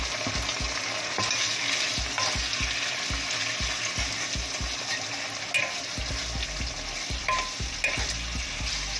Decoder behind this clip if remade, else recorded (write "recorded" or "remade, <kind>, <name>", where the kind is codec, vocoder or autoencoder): recorded